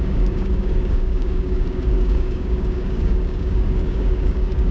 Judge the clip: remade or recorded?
remade